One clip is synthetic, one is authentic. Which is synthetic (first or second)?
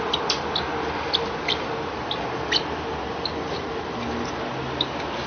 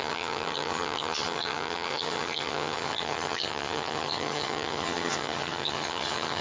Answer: second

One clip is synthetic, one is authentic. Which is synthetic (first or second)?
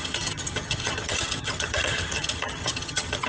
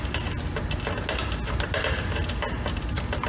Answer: first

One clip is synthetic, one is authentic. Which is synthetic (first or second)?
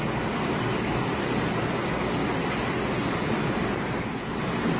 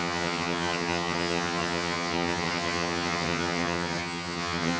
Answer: second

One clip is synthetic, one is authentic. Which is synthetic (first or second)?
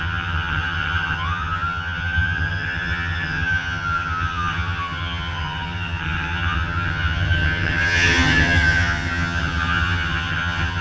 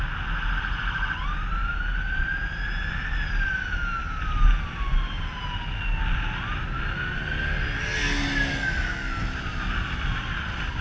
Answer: first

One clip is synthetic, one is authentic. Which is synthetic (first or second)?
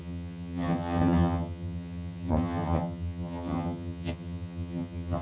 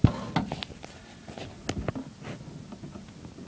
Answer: first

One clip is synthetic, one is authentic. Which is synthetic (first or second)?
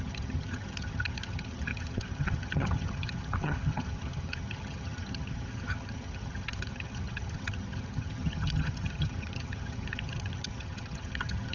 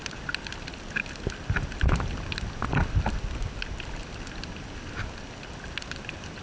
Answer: first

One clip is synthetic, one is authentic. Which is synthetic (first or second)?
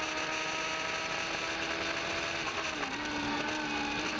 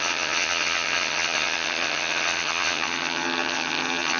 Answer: second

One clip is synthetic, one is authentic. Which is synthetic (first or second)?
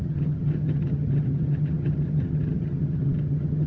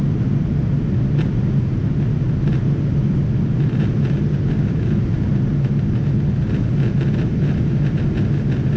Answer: first